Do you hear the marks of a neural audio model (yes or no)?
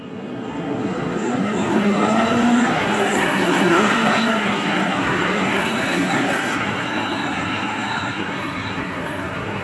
yes